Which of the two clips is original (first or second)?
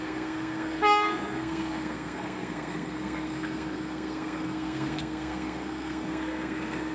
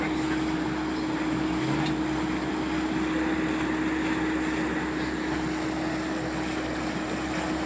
second